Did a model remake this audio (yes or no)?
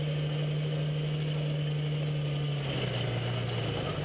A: no